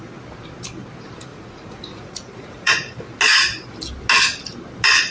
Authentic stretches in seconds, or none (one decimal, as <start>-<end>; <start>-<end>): 0.0-1.3; 3.0-5.1

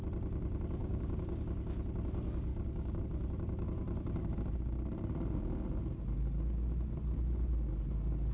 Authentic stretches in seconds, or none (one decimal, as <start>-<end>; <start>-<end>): 0.0-0.8; 1.4-2.5; 3.0-8.3

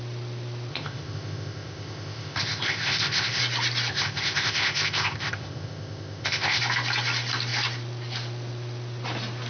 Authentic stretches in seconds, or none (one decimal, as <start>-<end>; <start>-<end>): 0.0-0.7; 3.4-3.9; 6.6-9.5

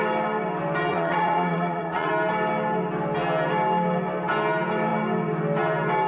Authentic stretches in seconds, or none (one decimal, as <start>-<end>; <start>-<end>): 0.0-0.9; 2.1-6.1

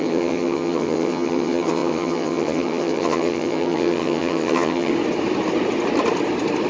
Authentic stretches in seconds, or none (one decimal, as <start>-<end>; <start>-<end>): 4.9-6.7